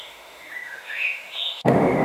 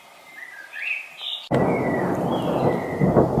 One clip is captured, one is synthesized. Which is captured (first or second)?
second